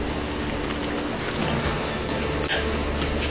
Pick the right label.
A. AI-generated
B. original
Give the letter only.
B